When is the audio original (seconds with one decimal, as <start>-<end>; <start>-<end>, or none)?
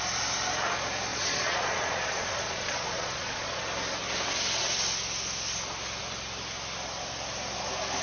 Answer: 0.0-1.1; 3.6-8.0